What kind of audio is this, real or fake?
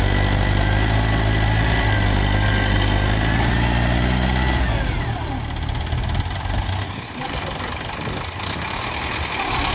real